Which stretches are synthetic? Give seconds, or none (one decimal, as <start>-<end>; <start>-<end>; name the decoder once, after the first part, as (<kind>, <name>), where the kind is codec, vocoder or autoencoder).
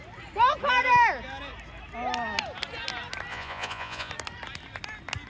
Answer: 3.3-4.1 (vocoder, Vocos)